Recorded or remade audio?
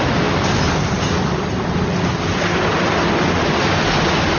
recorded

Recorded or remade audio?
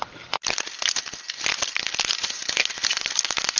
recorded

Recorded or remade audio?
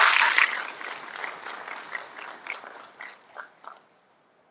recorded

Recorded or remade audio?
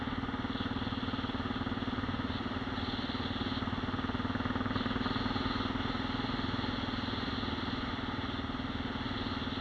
recorded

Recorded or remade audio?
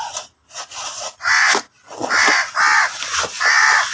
recorded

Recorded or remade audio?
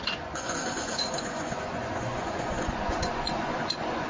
remade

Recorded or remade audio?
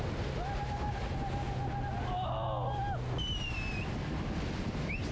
recorded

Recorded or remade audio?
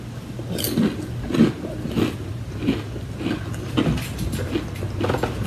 recorded